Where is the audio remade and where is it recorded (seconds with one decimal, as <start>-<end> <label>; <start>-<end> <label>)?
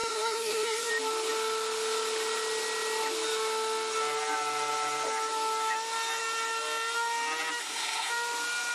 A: 0.0-0.9 remade; 0.9-7.6 recorded; 7.6-8.1 remade; 8.1-8.7 recorded